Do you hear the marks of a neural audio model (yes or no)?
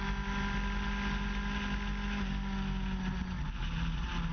no